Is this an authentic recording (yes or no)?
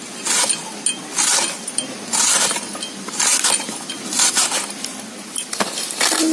yes